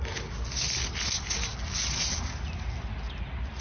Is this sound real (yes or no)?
yes